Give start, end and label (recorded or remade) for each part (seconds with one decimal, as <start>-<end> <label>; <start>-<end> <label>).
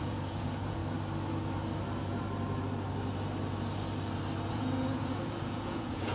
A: 0.0-0.8 remade; 0.8-4.5 recorded; 4.5-6.1 remade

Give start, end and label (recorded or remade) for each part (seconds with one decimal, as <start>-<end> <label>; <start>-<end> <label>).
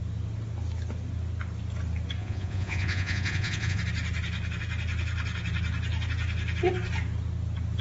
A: 0.0-2.2 recorded; 2.2-3.8 remade; 3.8-7.8 recorded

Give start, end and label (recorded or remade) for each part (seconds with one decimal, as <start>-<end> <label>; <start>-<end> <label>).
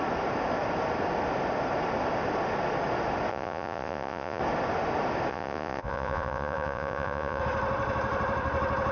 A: 0.0-3.3 recorded; 3.3-4.4 remade; 4.4-5.3 recorded; 5.3-7.4 remade; 7.4-8.9 recorded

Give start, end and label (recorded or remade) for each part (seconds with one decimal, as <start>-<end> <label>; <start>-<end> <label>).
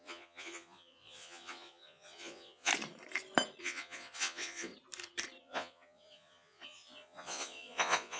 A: 0.0-2.7 remade; 2.7-3.6 recorded; 3.6-4.7 remade; 4.7-5.4 recorded; 5.4-8.2 remade